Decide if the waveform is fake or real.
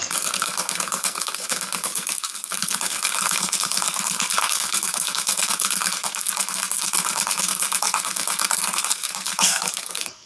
fake